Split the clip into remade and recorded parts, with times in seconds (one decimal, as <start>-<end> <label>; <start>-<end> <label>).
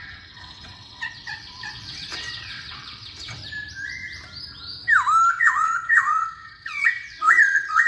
0.0-3.4 remade; 3.4-5.3 recorded; 5.3-7.9 remade